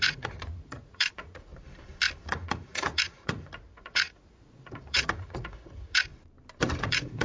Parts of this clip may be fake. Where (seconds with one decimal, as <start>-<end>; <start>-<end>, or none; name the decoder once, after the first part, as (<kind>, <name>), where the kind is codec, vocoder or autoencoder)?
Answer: 0.0-1.5 (vocoder, Vocos); 2.2-6.1; 6.8-7.2